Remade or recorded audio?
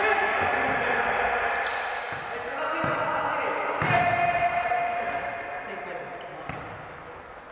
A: recorded